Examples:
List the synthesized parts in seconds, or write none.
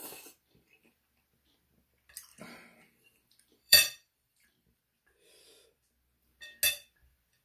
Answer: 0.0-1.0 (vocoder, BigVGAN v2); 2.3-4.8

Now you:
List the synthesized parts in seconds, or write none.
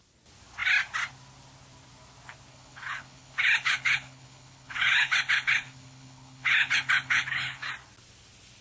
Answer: 2.5-7.7 (codec, HILCodec)